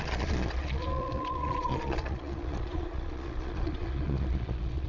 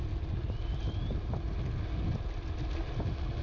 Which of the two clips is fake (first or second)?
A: first